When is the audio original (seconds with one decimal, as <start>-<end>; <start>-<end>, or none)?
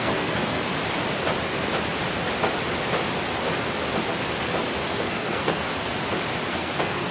0.7-5.0; 5.7-6.5